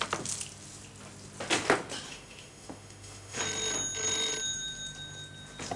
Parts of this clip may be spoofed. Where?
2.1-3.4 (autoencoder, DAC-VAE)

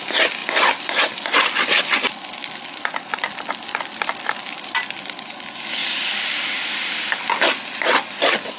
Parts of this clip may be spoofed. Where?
none

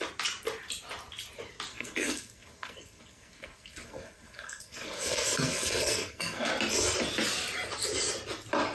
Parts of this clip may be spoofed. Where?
1.7-6.5 (codec, SNAC)

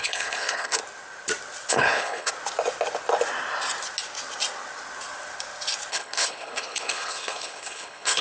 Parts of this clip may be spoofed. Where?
0.0-0.8 (codec, HILCodec); 1.7-2.3; 5.9-8.2

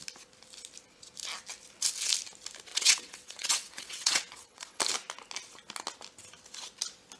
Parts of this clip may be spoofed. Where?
2.7-4.8 (vocoder, WaveNeXt)

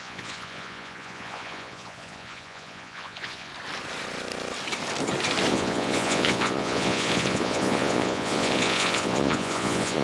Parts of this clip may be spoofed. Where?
0.0-3.5 (vocoder, Vocos); 5.5-10.0

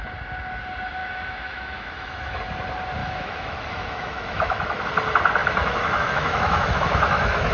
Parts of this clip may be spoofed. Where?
1.0-2.4 (autoencoder, DAC-VAE); 3.0-4.8; 5.4-7.5

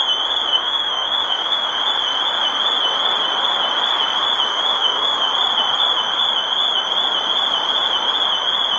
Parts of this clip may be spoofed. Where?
0.5-1.7 (autoencoder, DAC-VAE); 4.5-5.3